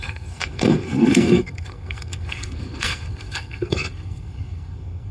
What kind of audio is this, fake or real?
fake